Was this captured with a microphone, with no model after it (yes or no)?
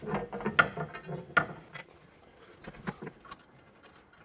yes